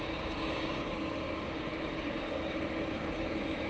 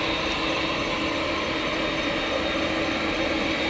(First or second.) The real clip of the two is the second